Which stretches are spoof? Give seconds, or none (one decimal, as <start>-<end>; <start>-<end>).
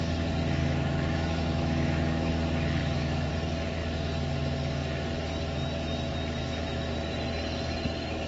0.6-2.3; 2.8-3.3